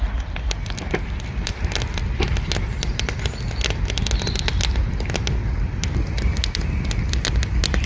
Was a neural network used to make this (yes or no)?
no